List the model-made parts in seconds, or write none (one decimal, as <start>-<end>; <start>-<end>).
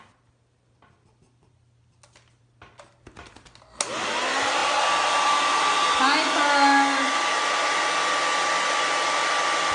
none